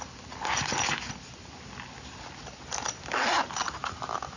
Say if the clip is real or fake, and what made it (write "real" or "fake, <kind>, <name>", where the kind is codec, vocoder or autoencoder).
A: real